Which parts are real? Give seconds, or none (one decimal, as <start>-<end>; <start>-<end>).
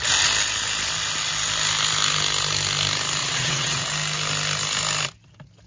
0.0-3.2; 3.8-5.7